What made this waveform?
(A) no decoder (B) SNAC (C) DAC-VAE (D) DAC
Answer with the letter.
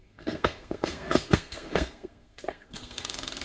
B